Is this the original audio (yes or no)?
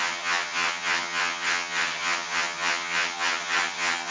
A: no